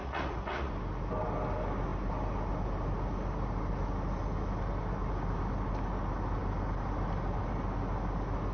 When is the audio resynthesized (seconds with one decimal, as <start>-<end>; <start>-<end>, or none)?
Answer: 0.0-0.7